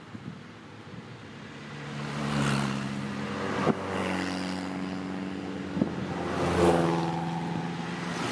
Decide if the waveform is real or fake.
real